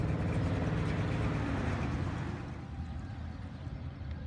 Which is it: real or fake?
real